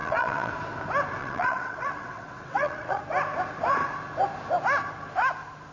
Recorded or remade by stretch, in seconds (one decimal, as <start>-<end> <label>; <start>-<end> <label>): 0.0-0.5 remade; 0.5-1.2 recorded; 1.2-3.0 remade; 3.0-5.7 recorded